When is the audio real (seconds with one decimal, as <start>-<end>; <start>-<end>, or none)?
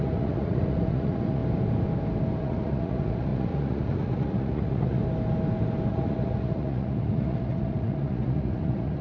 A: 1.4-2.4; 5.0-5.9